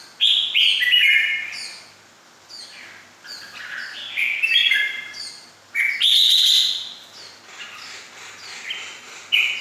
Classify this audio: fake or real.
real